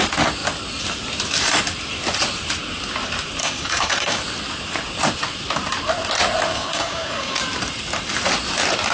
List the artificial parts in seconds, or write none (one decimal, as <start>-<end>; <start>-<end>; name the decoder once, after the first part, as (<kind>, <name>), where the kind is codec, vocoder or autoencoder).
3.4-4.2 (codec, DAC); 6.5-7.4